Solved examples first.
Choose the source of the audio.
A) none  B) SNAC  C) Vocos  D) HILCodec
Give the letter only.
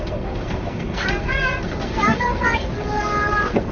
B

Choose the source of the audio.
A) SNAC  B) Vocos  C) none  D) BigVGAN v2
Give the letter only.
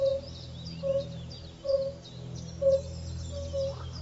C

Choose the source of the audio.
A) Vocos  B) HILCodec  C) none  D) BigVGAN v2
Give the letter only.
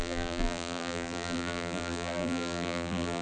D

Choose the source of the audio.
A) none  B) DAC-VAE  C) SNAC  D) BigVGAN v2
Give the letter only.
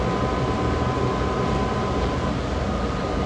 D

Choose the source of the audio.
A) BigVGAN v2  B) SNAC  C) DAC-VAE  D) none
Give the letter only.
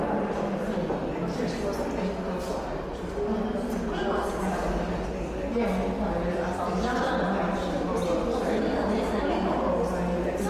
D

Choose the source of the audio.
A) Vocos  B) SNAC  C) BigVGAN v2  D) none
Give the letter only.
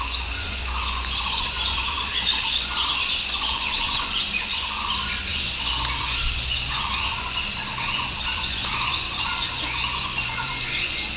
A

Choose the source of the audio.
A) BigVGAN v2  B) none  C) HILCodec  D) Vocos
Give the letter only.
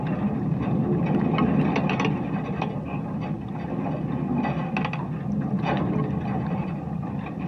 B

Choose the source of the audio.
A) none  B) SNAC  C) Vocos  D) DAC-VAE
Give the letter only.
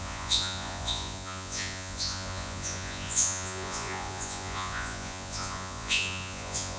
C